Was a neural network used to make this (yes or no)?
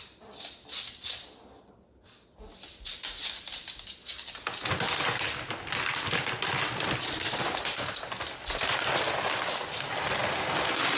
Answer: no